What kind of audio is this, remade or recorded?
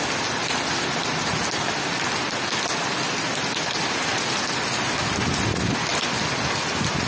recorded